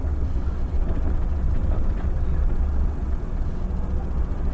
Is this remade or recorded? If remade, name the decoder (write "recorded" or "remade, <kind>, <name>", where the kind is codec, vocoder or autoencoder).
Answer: remade, vocoder, WaveNeXt